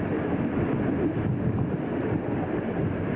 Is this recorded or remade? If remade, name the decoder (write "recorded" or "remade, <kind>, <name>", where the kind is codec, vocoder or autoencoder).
recorded